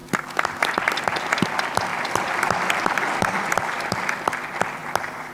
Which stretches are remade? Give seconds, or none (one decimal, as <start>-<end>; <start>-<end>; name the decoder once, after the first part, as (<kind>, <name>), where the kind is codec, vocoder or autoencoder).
0.0-1.0 (vocoder, BigVGAN v2); 1.9-4.3; 4.8-5.3